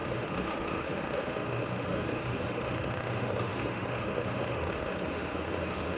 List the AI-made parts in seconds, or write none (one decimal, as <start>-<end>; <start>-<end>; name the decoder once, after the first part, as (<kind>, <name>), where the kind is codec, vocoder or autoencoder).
0.0-6.0 (autoencoder, DAC-VAE)